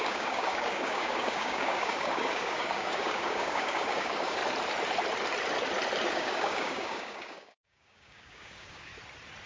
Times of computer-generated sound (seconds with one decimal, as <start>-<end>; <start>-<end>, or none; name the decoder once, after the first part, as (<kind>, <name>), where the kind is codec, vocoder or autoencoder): 0.0-4.4 (codec, DAC); 6.1-8.9